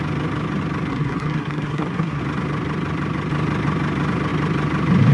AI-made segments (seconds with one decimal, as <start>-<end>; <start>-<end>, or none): 0.9-2.2